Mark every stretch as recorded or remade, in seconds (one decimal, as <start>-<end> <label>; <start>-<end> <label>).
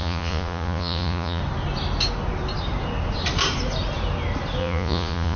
0.0-1.4 remade; 1.4-4.6 recorded; 4.6-5.4 remade